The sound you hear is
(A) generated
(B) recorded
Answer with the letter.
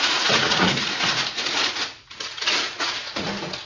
A